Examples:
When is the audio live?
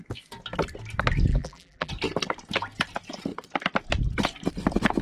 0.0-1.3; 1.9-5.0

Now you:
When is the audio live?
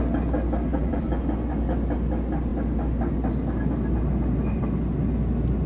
0.0-0.7; 1.2-5.7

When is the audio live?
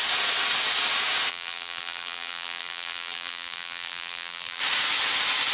0.0-1.3; 4.6-5.5